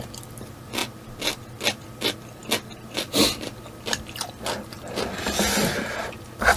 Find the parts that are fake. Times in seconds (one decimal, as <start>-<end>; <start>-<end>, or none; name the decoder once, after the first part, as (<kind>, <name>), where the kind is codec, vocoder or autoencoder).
none